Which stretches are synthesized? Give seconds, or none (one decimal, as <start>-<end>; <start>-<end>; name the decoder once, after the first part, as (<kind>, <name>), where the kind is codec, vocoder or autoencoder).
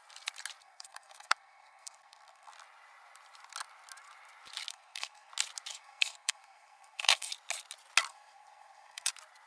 0.6-2.5 (codec, SNAC); 4.7-5.3; 5.7-7.3; 8.1-9.1